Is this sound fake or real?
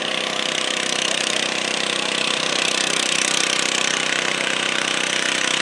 fake